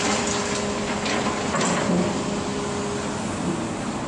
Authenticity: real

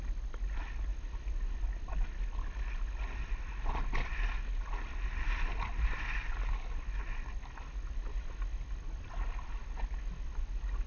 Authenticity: real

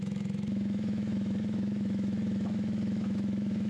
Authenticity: fake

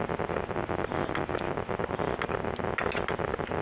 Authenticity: real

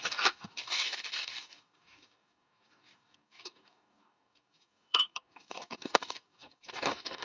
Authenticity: fake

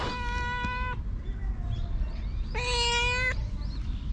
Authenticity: real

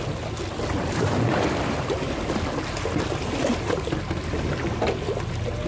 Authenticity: real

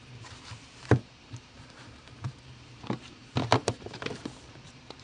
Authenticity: fake